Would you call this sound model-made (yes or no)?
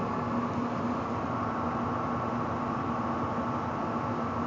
no